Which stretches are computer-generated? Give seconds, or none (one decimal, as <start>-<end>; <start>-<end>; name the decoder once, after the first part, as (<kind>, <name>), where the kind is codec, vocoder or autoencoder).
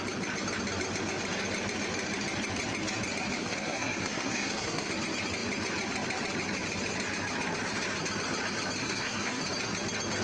3.4-4.9 (codec, SNAC); 8.8-9.4